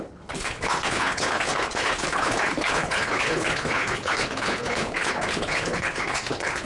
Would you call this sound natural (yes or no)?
no